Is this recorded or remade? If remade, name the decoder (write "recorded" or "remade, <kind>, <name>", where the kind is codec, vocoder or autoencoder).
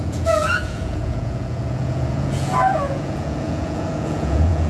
remade, vocoder, Vocos